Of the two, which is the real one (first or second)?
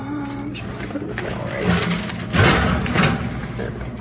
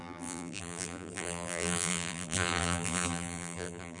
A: first